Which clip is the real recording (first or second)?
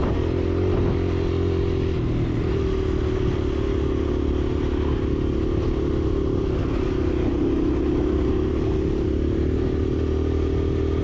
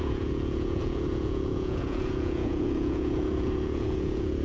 first